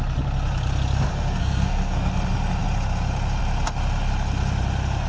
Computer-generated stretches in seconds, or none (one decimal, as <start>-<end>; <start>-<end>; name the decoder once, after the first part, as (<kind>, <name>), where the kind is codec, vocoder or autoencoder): 1.1-2.1 (codec, SNAC)